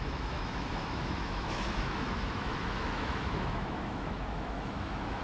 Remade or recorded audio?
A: remade